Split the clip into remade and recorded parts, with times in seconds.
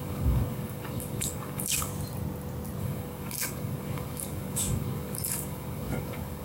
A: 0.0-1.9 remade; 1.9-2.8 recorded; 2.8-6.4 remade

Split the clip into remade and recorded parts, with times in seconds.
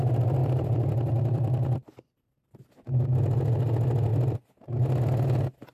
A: 0.0-0.4 recorded; 0.4-2.4 remade; 2.4-4.1 recorded; 4.1-4.7 remade; 4.7-5.7 recorded